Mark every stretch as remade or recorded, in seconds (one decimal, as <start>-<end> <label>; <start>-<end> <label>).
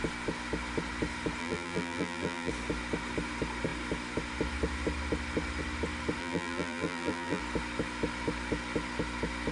0.0-1.4 recorded; 1.4-2.5 remade; 2.5-6.2 recorded; 6.2-7.4 remade; 7.4-9.5 recorded